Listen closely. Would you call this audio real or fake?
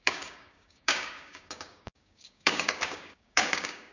fake